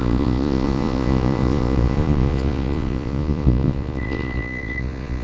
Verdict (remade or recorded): remade